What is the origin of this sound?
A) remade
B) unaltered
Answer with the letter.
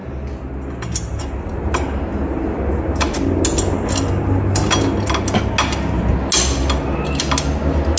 B